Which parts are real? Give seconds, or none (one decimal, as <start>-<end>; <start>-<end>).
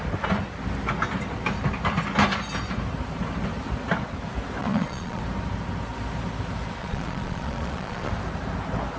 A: 0.0-4.6; 5.2-6.8; 8.1-9.0